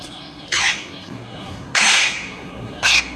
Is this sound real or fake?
fake